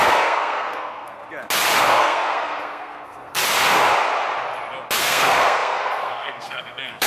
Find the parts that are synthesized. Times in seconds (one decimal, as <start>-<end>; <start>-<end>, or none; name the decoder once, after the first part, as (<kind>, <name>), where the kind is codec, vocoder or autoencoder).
0.0-1.2 (codec, SNAC); 1.8-3.4; 5.0-7.1